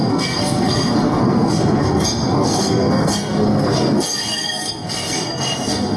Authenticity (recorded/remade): remade